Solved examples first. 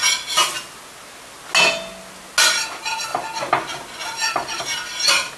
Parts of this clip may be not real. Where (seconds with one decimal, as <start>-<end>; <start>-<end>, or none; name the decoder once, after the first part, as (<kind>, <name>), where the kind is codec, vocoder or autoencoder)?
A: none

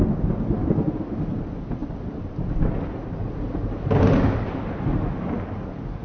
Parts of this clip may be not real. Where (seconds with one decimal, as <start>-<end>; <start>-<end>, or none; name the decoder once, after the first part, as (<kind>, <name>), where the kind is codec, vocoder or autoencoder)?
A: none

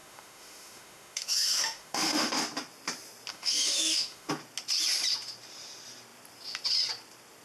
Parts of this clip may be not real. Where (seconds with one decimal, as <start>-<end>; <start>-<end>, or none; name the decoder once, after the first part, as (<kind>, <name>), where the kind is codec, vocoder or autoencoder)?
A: 0.0-2.4 (autoencoder, DAC-VAE); 3.3-4.3

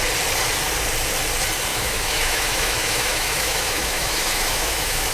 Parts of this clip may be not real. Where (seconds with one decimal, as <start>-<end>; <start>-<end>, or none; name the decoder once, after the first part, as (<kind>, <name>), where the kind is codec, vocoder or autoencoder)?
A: 1.7-5.1 (autoencoder, DAC-VAE)